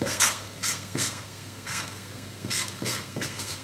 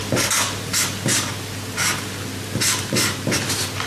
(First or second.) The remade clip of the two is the first